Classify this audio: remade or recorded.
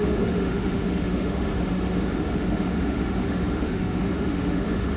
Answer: remade